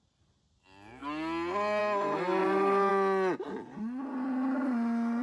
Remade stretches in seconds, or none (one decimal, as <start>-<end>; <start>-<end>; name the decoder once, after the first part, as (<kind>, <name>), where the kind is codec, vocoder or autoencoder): 2.4-2.9 (vocoder, BigVGAN v2)